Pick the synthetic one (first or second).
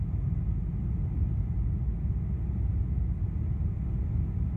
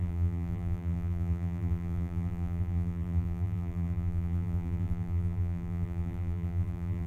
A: second